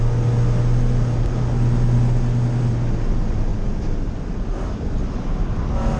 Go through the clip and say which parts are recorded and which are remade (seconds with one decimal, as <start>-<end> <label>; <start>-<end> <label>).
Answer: 0.0-3.5 recorded; 3.5-5.2 remade; 5.2-6.0 recorded